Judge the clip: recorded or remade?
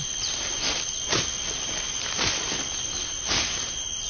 recorded